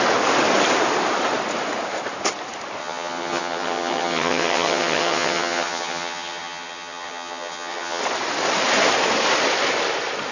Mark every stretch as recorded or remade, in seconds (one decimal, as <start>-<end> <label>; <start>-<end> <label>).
0.0-2.8 recorded; 2.8-8.0 remade; 8.0-10.3 recorded